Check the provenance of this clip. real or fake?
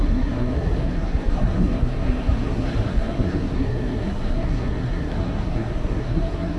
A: fake